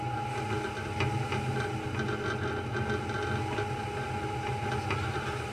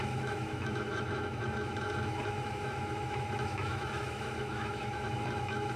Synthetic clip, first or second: second